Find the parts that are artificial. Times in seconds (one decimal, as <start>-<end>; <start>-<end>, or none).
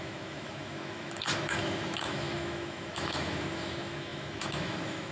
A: 0.0-5.1